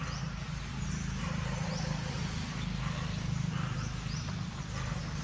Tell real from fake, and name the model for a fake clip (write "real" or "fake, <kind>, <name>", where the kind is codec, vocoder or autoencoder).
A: real